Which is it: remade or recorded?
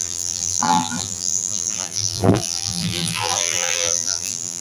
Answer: remade